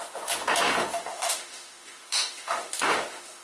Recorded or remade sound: remade